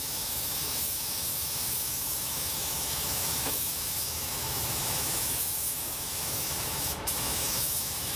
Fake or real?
fake